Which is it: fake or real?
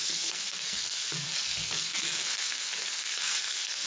fake